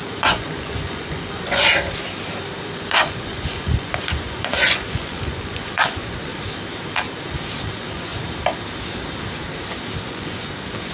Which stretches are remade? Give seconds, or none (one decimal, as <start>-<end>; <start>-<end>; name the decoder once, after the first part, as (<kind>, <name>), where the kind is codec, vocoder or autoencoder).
0.0-1.7 (vocoder, Vocos); 2.6-6.3; 7.6-8.1; 10.0-10.9

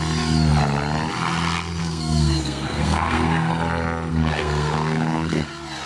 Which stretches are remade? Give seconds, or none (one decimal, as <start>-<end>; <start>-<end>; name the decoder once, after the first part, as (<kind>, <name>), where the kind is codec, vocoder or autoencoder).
1.8-3.5 (codec, SNAC); 4.1-5.5